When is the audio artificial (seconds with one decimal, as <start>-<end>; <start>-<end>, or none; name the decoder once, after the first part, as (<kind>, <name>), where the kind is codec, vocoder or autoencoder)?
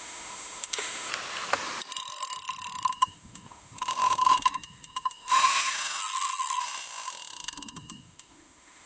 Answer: 0.0-1.1 (autoencoder, DAC-VAE); 2.9-6.0; 6.6-8.9